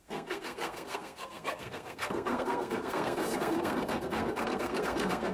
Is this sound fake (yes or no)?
yes